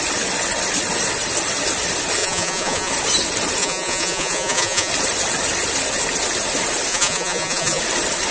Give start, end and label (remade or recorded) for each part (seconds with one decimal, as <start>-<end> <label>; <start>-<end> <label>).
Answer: 0.0-2.2 recorded; 2.2-2.9 remade; 2.9-3.6 recorded; 3.6-4.9 remade; 4.9-6.9 recorded; 6.9-7.8 remade; 7.8-8.3 recorded